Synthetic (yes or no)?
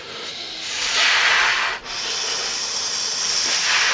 no